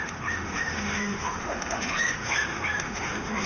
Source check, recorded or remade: remade